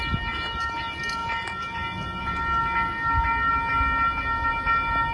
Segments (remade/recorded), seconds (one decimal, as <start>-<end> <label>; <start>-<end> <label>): 0.0-5.1 recorded